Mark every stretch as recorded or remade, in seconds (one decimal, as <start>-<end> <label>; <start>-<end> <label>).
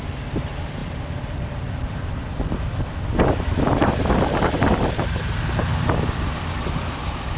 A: 0.0-0.8 recorded; 0.8-4.9 remade; 4.9-7.4 recorded